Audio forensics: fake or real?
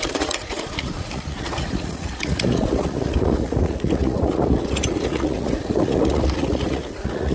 fake